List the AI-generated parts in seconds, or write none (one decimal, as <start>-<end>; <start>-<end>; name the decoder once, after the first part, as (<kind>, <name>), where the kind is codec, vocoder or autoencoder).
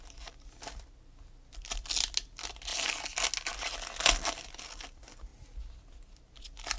none